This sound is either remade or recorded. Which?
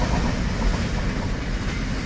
recorded